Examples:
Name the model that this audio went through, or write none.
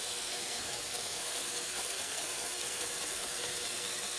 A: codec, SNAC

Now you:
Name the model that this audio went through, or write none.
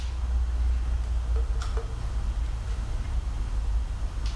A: none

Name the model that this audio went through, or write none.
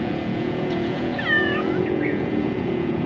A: vocoder, Vocos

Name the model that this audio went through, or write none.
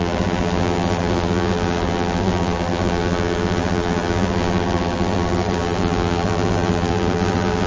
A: vocoder, BigVGAN v2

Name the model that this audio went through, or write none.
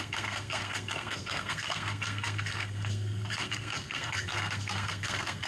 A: codec, SNAC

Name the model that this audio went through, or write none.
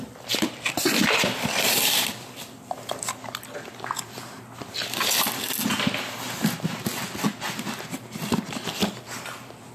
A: none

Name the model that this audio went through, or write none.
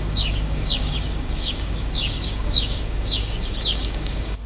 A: codec, DAC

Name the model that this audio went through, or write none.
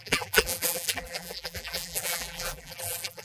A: vocoder, BigVGAN v2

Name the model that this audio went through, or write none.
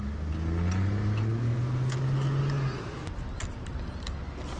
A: none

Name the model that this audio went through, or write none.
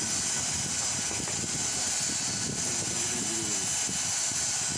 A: none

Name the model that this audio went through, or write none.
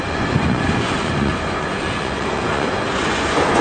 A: vocoder, Vocos